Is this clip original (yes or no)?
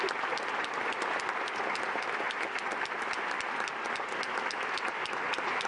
yes